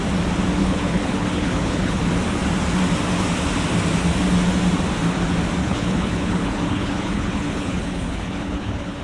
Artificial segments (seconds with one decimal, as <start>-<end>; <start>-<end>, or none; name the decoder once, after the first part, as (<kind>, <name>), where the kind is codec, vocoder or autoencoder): 0.6-2.0 (codec, HILCodec); 5.6-9.0